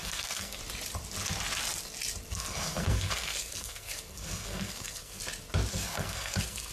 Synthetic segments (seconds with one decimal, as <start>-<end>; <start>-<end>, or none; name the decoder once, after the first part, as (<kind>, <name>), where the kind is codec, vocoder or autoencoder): 0.0-0.6 (codec, SNAC); 2.3-5.2; 5.7-6.7